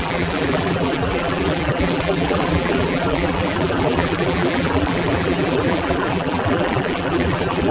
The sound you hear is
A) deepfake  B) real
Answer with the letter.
A